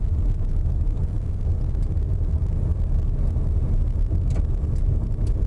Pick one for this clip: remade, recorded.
recorded